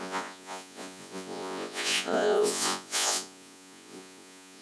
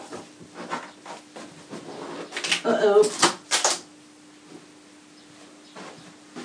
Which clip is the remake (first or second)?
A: first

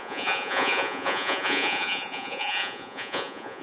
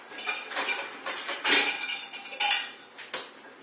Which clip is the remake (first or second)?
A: first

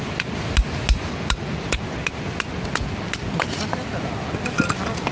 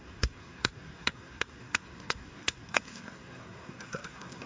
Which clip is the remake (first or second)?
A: second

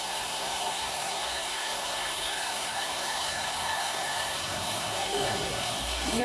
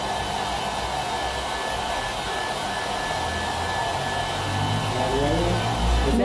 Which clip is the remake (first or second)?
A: first